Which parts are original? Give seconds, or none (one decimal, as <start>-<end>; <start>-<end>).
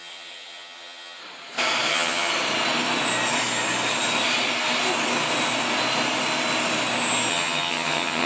1.2-1.9; 2.3-7.3